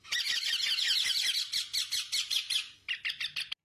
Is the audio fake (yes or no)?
no